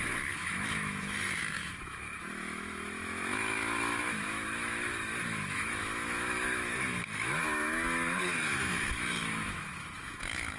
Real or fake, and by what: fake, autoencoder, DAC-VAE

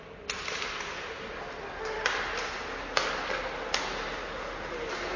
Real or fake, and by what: real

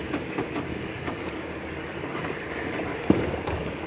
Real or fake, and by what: fake, codec, DAC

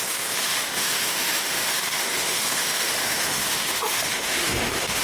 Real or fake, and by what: fake, autoencoder, DAC-VAE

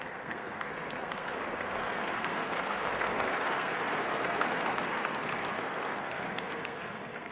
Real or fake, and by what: fake, codec, SNAC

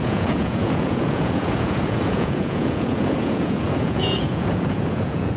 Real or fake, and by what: fake, vocoder, Vocos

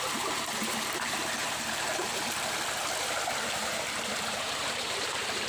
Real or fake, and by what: fake, vocoder, BigVGAN v2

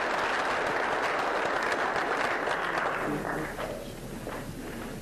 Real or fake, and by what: real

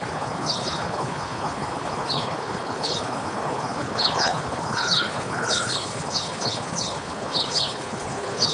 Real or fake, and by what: fake, codec, HILCodec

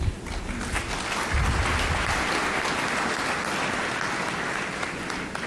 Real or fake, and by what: real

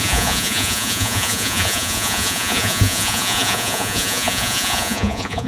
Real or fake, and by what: fake, vocoder, Vocos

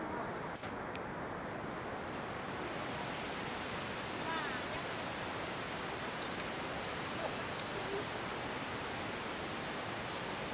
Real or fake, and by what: real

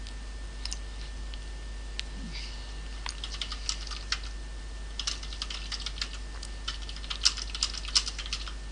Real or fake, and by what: real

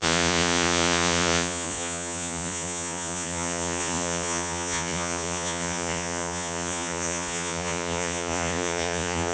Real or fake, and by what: fake, vocoder, Vocos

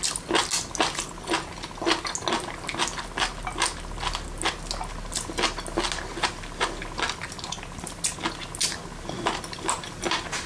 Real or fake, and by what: real